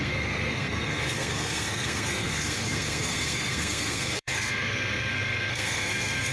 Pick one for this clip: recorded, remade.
remade